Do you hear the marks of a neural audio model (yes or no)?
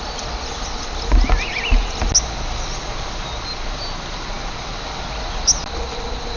no